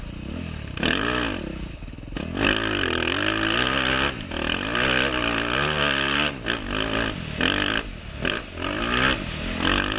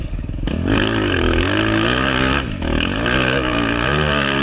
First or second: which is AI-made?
second